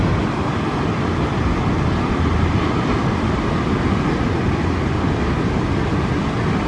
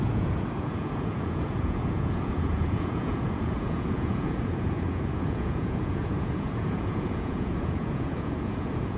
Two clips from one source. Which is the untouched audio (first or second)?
first